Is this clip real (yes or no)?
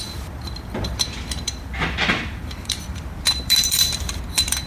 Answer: no